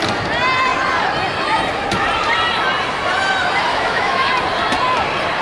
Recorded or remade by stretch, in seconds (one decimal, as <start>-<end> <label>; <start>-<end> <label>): 0.0-3.7 recorded; 3.7-4.3 remade; 4.3-5.4 recorded